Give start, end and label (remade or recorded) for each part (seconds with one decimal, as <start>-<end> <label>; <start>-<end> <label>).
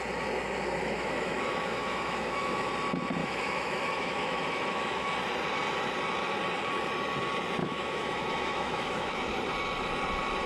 0.0-0.8 recorded; 0.8-2.7 remade; 2.7-3.2 recorded; 3.2-5.1 remade; 5.1-7.6 recorded; 7.6-9.2 remade; 9.2-10.5 recorded